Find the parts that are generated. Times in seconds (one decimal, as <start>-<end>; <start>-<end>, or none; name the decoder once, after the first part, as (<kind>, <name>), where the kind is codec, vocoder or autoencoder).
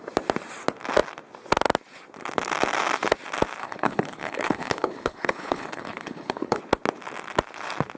3.6-6.6 (codec, HILCodec)